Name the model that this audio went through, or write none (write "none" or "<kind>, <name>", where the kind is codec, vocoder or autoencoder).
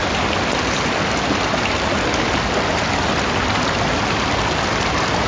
none